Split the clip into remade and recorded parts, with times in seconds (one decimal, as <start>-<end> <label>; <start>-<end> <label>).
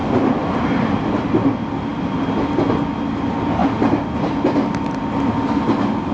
0.0-6.1 recorded